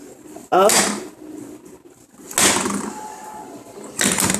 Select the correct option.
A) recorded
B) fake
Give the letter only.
A